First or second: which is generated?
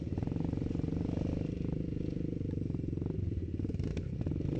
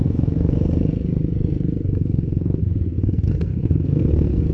second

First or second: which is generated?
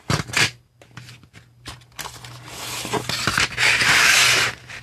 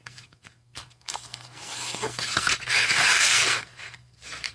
second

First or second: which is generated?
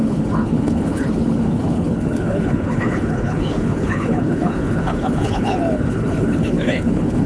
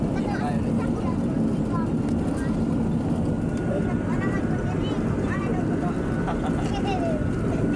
first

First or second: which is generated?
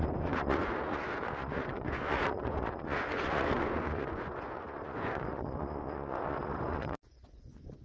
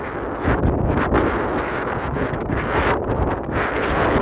first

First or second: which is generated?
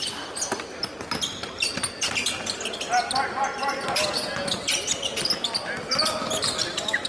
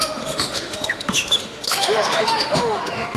second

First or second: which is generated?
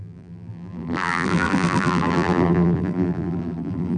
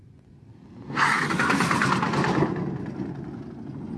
first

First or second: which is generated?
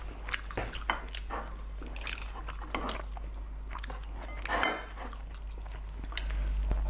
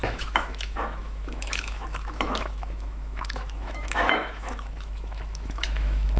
second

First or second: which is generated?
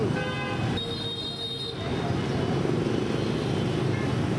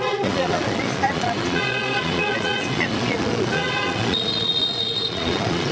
second